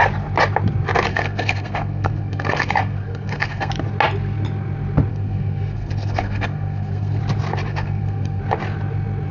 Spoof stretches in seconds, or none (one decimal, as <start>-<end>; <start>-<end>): 1.1-3.7; 5.1-7.2; 7.7-8.4